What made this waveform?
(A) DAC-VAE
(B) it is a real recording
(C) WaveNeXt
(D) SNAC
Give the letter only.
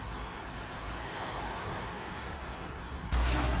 D